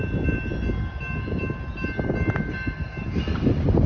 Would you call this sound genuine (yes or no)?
yes